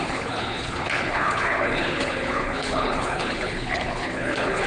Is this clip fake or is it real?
fake